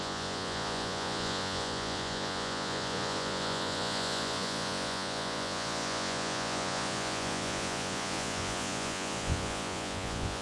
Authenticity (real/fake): fake